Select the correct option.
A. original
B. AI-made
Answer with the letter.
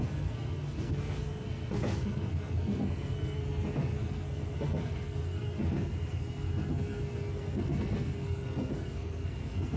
B